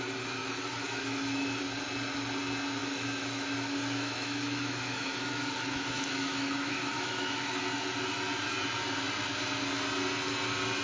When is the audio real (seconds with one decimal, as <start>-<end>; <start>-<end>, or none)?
0.0-0.4; 1.6-2.8; 7.6-10.8